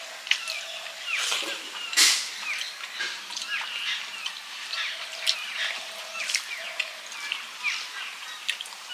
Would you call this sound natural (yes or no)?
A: no